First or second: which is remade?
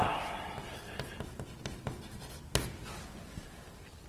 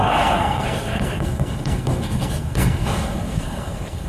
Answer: second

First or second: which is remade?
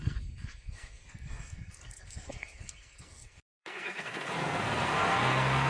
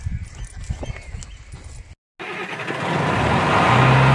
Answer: first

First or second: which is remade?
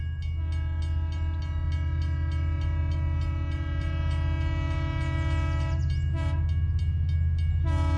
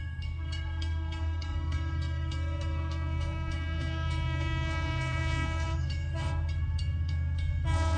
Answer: second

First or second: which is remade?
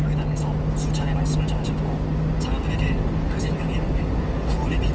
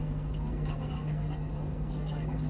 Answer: second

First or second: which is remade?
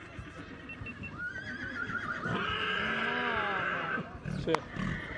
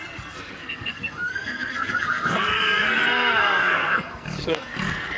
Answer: second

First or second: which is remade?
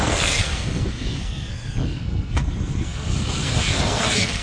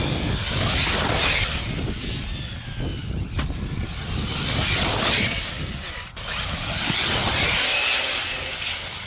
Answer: first